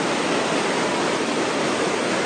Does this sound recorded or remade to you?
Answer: recorded